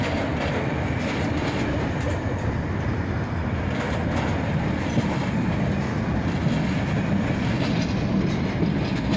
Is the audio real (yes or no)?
yes